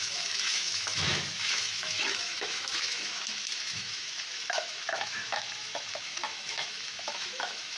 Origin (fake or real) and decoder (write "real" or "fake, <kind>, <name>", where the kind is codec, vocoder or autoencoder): fake, autoencoder, DAC-VAE